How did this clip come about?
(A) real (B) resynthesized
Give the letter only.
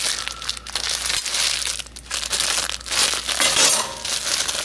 A